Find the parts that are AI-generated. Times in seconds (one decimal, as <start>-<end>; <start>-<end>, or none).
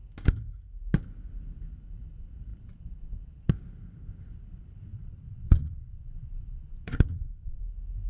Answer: 4.9-7.6